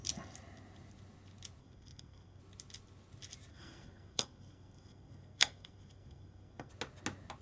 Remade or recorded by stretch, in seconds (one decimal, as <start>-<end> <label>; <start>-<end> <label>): 0.0-1.6 recorded; 1.6-2.4 remade; 2.4-3.5 recorded; 3.5-6.7 remade; 6.7-7.4 recorded